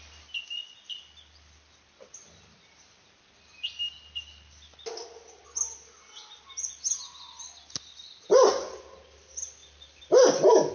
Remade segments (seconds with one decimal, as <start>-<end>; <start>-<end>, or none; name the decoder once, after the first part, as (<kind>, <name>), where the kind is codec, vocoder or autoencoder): 9.6-10.7 (vocoder, BigVGAN v2)